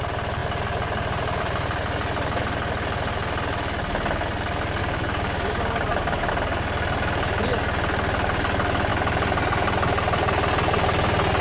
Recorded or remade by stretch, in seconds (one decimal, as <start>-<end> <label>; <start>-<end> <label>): 0.0-4.8 recorded; 4.8-6.3 remade; 6.3-11.4 recorded